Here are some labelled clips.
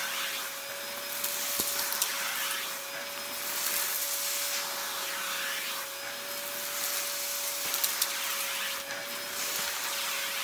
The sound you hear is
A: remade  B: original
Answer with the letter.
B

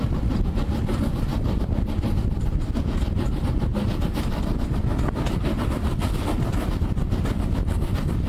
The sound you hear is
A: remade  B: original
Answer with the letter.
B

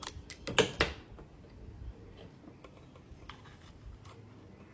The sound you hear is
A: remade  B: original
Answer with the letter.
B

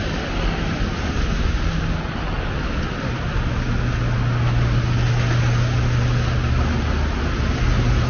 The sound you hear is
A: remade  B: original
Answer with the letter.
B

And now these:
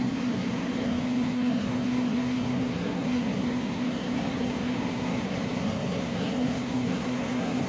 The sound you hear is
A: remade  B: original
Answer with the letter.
A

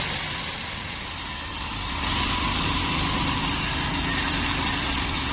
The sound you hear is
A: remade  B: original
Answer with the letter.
B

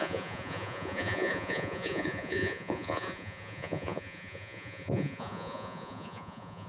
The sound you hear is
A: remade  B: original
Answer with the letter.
A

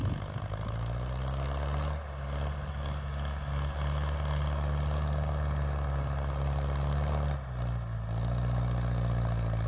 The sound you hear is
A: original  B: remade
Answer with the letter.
A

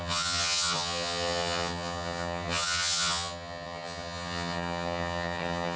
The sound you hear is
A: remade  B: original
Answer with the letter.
A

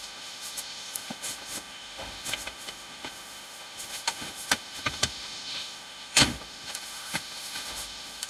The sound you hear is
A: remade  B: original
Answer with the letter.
A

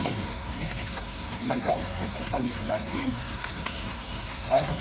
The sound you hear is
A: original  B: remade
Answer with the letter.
B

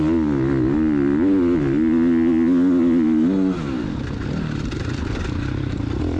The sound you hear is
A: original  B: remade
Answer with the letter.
A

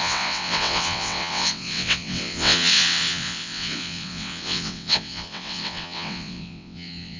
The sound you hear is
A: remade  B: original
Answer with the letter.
A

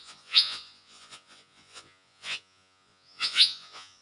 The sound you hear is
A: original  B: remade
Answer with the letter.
B